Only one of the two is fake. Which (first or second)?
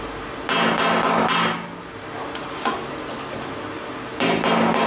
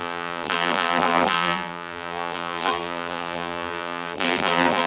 second